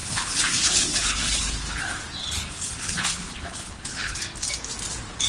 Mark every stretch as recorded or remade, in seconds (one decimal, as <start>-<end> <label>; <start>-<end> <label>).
0.0-1.8 remade; 1.8-2.2 recorded; 2.2-4.2 remade; 4.2-5.3 recorded